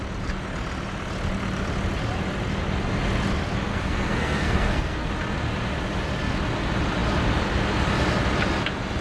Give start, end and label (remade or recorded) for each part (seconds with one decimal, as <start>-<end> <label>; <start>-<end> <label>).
0.0-3.7 recorded; 3.7-5.1 remade; 5.1-9.0 recorded